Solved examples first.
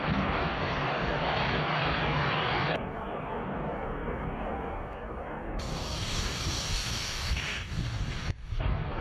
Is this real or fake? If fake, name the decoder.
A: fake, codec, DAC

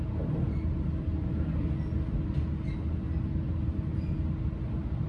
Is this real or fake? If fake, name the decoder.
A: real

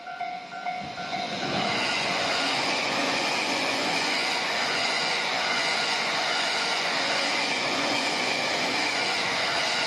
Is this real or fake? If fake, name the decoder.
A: fake, vocoder, Vocos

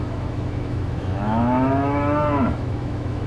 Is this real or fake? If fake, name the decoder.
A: fake, autoencoder, DAC-VAE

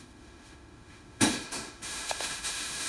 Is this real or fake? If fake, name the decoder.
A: fake, autoencoder, DAC-VAE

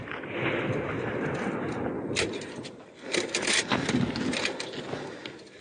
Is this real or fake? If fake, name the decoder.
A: real